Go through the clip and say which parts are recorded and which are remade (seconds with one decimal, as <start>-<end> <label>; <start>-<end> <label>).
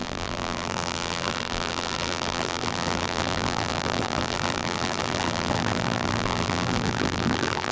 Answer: 0.0-7.7 remade